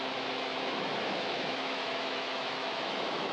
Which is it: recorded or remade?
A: remade